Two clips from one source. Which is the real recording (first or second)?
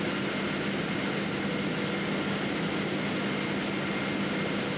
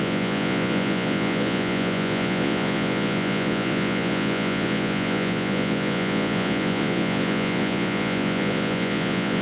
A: first